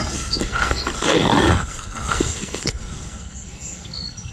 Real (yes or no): no